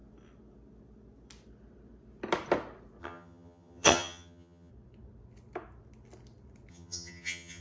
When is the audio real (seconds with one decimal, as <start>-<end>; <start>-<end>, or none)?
0.0-3.0; 4.7-6.7